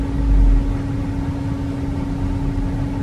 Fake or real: real